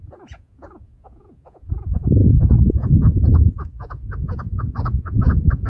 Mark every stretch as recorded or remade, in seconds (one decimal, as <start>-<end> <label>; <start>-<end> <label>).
0.0-5.7 remade